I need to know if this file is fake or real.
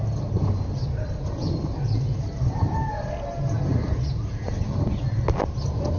real